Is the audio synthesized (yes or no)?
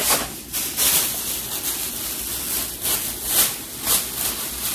no